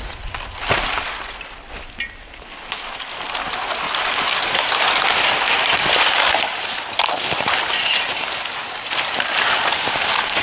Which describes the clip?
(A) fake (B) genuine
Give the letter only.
B